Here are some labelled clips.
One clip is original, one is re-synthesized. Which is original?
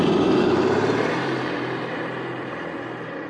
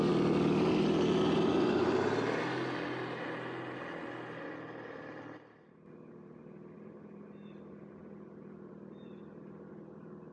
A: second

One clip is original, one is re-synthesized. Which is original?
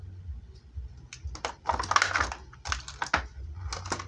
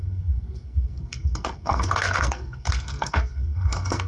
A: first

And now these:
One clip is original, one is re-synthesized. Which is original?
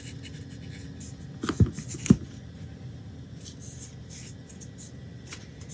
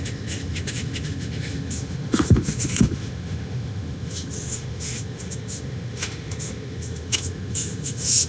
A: first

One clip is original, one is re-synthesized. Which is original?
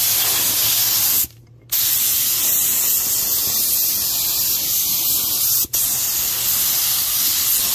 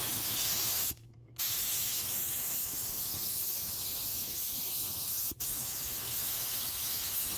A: first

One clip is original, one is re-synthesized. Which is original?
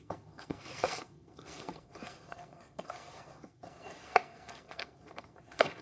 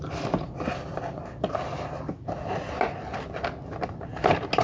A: second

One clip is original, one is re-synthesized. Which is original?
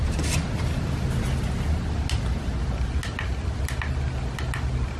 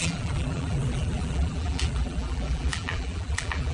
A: first